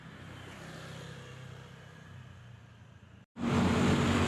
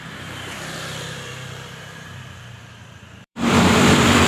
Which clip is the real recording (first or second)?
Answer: first